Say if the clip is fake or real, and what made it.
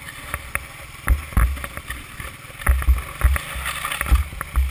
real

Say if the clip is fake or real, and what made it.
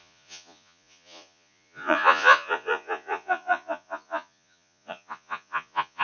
fake, vocoder, Vocos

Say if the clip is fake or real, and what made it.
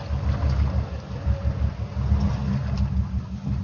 real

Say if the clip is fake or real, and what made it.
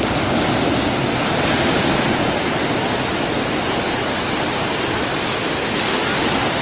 real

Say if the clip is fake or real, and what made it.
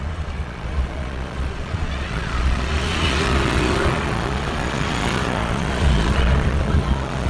fake, vocoder, Vocos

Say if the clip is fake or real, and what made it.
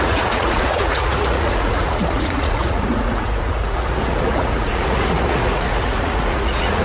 fake, vocoder, Vocos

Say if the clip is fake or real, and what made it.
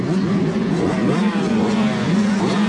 fake, vocoder, Vocos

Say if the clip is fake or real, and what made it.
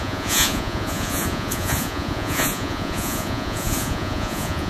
fake, vocoder, Vocos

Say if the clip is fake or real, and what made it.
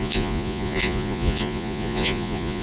fake, vocoder, Vocos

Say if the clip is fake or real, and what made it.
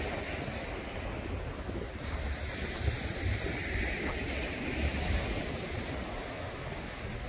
real